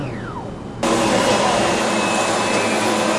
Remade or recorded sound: recorded